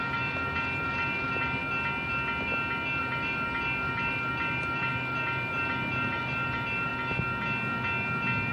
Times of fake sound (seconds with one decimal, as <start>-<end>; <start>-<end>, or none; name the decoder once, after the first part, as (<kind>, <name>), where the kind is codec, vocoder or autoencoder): 0.0-1.6 (vocoder, BigVGAN v2); 3.0-6.9